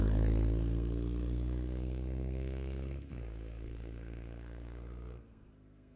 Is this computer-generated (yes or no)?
yes